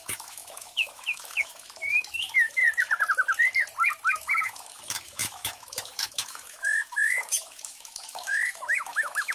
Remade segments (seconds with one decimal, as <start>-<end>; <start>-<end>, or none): 0.0-2.6; 4.1-9.3